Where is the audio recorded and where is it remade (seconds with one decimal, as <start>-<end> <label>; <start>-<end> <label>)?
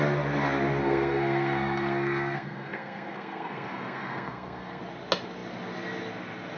0.0-0.8 recorded; 0.8-4.8 remade; 4.8-6.6 recorded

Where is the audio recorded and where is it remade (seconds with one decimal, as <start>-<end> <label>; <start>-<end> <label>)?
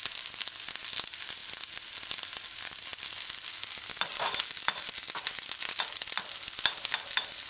0.0-7.5 recorded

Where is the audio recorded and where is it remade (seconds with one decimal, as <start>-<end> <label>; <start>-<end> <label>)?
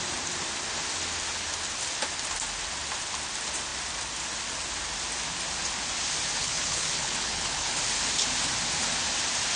0.0-6.4 recorded; 6.4-7.8 remade; 7.8-9.6 recorded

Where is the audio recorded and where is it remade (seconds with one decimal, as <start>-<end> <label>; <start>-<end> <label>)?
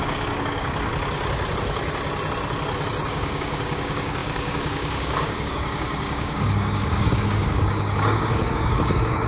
0.0-0.9 remade; 0.9-3.1 recorded; 3.1-9.3 remade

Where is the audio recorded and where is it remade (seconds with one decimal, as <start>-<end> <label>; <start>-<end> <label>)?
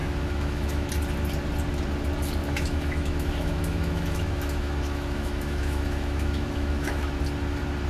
0.0-0.9 remade; 0.9-2.4 recorded; 2.4-7.1 remade; 7.1-7.9 recorded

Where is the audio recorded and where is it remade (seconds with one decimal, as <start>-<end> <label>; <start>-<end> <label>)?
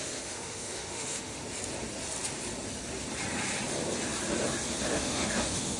0.0-1.4 remade; 1.4-4.9 recorded; 4.9-5.8 remade